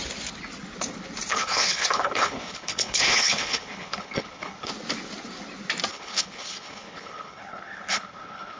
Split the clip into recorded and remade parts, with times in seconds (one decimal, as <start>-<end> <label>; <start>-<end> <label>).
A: 0.0-1.3 recorded; 1.3-4.7 remade; 4.7-5.9 recorded; 5.9-8.6 remade